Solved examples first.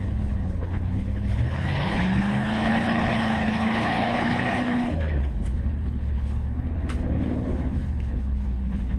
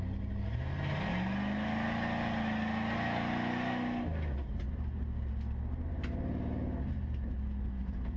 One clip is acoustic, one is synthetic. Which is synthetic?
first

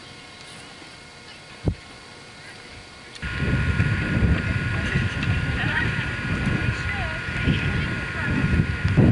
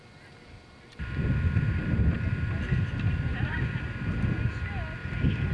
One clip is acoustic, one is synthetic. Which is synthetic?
first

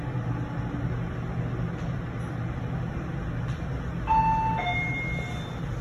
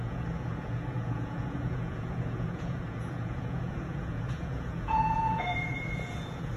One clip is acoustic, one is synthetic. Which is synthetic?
second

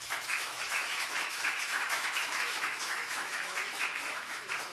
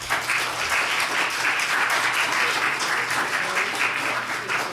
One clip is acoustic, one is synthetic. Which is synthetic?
first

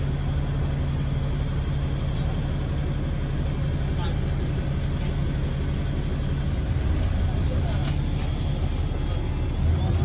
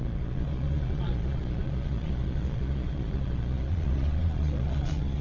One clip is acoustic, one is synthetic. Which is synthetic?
second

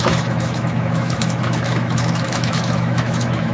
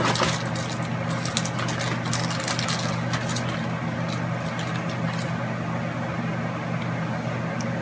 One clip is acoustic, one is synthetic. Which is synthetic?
first